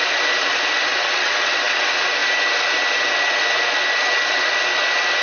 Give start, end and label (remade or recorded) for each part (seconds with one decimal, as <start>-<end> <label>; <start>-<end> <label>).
0.0-0.9 recorded; 0.9-1.8 remade; 1.8-5.2 recorded